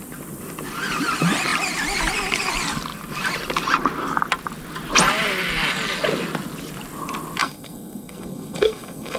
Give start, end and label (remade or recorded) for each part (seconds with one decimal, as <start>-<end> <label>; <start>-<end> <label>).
0.0-7.4 recorded; 7.4-9.2 remade